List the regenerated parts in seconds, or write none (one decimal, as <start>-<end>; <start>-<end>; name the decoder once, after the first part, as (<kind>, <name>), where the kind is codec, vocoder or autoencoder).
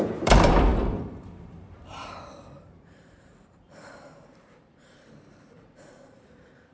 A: 0.0-6.7 (vocoder, BigVGAN v2)